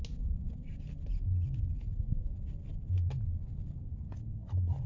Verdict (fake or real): real